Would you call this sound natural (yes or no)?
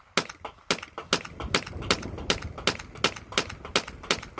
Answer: yes